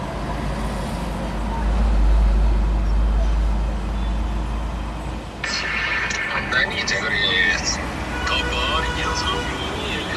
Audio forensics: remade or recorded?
recorded